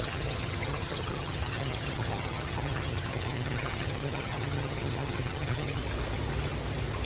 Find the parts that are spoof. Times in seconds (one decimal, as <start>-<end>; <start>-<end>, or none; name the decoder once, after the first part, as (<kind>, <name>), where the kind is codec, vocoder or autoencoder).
0.0-5.8 (vocoder, HiFi-GAN)